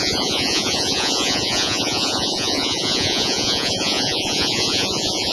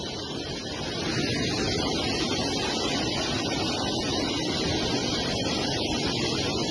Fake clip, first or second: first